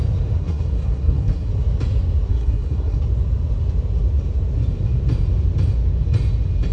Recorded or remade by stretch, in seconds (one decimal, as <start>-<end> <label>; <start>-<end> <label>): 0.0-0.4 recorded; 0.4-1.5 remade; 1.5-2.3 recorded; 2.3-3.0 remade; 3.0-6.7 recorded